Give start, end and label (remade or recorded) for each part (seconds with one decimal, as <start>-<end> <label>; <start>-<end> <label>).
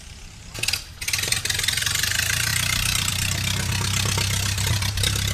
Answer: 0.0-5.3 recorded